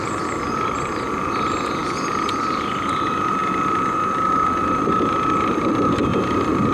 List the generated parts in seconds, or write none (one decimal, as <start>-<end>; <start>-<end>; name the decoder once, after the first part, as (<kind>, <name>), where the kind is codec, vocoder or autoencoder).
none